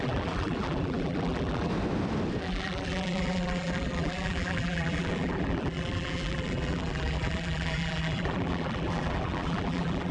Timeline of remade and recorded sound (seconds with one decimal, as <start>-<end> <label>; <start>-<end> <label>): 0.0-1.7 remade; 1.7-2.4 recorded; 2.4-10.1 remade